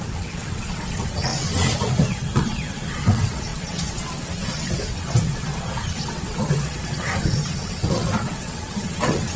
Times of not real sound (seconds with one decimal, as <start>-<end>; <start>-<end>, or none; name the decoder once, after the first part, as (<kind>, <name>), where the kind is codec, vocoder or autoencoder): 0.0-9.4 (vocoder, WaveNeXt)